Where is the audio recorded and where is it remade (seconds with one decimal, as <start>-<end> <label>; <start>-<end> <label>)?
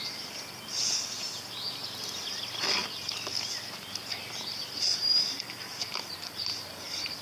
0.0-7.2 recorded